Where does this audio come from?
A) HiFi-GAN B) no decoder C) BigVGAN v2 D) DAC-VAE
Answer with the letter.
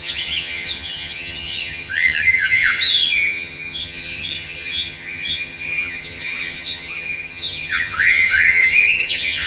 A